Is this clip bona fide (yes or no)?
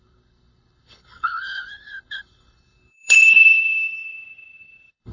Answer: no